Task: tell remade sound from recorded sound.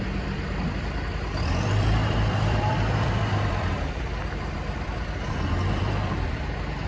remade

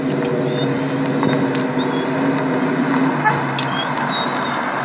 recorded